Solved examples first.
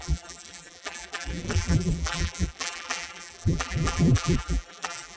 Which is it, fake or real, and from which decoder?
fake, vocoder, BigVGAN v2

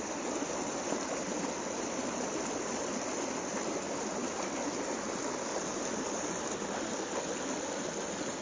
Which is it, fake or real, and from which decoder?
real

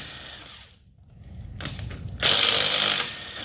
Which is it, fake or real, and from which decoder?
real